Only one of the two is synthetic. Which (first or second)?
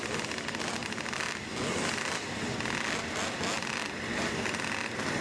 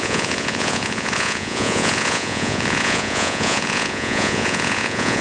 second